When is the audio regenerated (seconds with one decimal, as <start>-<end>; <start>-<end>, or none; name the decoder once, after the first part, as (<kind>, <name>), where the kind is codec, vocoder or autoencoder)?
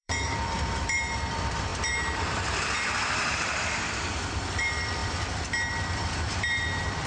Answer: 0.0-5.0 (vocoder, BigVGAN v2); 5.7-7.1